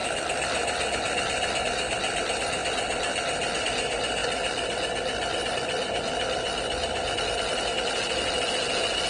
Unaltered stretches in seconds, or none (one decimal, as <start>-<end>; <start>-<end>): 0.0-9.1